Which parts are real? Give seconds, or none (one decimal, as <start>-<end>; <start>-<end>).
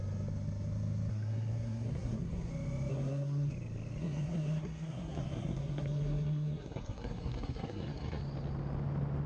0.0-1.1; 2.5-2.9; 3.5-4.0; 8.2-9.3